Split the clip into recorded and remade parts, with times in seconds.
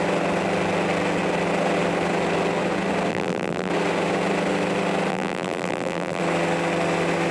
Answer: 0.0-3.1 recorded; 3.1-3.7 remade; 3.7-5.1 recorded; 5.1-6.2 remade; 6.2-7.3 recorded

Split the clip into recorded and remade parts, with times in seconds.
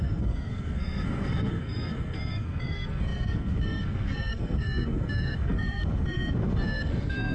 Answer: 0.0-7.3 remade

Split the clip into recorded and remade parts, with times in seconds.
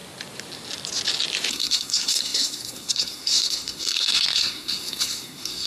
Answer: 0.0-1.5 recorded; 1.5-5.7 remade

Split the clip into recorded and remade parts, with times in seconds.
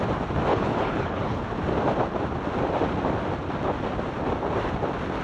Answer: 0.0-0.5 recorded; 0.5-1.4 remade; 1.4-5.2 recorded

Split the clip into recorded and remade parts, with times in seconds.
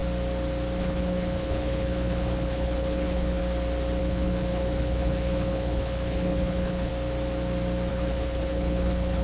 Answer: 0.0-0.8 recorded; 0.8-3.4 remade; 3.4-4.0 recorded; 4.0-6.9 remade; 6.9-7.9 recorded; 7.9-9.2 remade